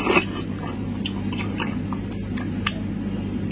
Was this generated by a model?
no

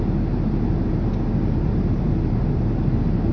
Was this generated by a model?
no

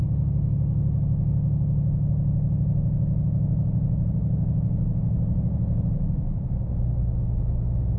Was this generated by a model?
no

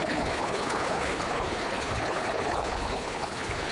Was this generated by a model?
yes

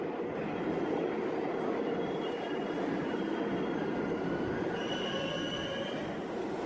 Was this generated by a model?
no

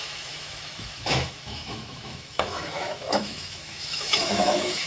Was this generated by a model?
yes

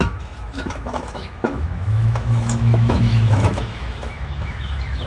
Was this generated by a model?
yes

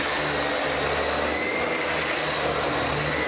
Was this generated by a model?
no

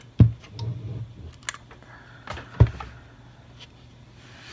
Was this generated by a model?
no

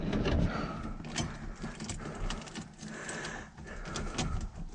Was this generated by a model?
no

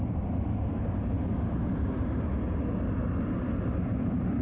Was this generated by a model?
no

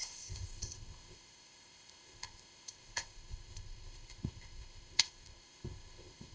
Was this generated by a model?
yes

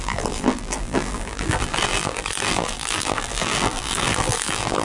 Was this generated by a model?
yes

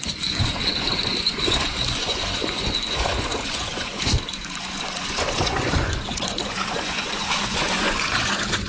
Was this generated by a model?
yes